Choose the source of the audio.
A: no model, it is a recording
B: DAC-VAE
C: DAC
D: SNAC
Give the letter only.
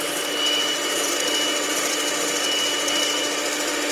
A